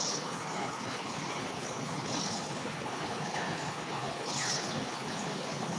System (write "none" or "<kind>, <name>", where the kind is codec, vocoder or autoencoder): codec, HILCodec